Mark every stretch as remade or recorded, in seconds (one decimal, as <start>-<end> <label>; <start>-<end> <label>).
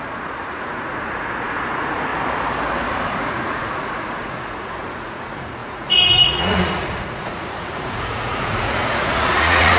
0.0-2.1 remade; 2.1-3.1 recorded; 3.1-9.8 remade